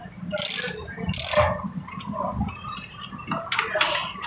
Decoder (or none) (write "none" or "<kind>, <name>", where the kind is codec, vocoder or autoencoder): none